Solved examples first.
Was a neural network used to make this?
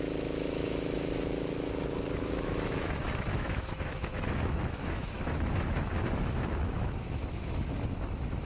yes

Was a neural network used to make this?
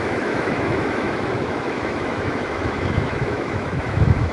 yes